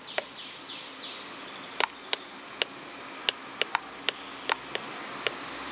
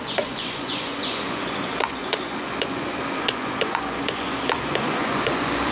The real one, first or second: first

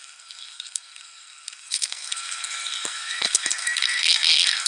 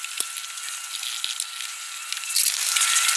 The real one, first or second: second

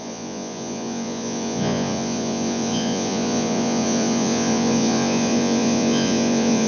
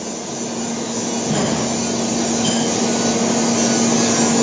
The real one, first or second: second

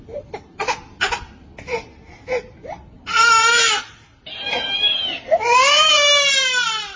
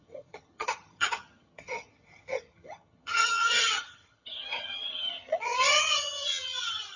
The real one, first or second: first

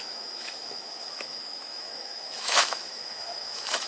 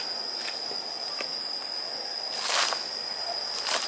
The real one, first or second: second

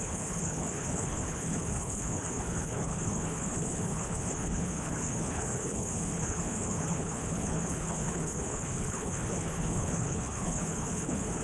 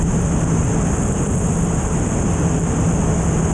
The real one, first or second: second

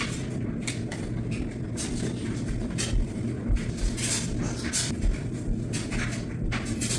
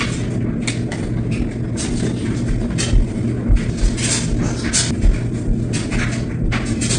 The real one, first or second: second